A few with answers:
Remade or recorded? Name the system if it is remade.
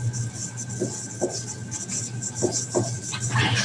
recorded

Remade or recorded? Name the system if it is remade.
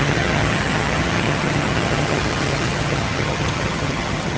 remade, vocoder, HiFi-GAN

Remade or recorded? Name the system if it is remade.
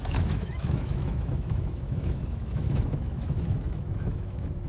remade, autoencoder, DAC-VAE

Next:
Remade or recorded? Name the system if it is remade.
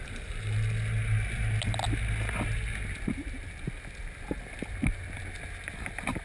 recorded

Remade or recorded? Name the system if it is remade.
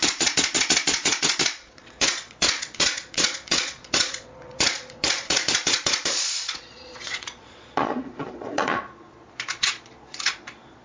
remade, vocoder, Vocos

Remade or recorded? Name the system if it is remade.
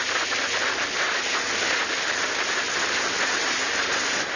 recorded